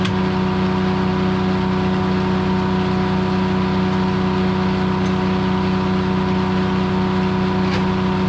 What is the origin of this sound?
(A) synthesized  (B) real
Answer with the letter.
B